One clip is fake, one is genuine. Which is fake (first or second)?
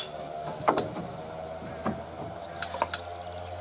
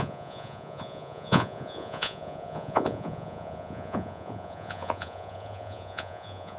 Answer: second